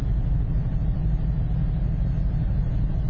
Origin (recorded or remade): recorded